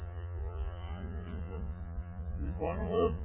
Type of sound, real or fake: fake